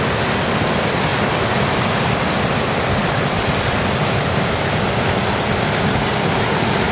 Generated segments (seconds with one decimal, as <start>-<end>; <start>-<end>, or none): none